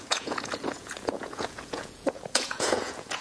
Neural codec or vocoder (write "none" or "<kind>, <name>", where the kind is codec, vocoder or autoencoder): vocoder, Vocos